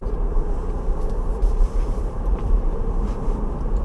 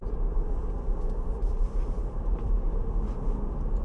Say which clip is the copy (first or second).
first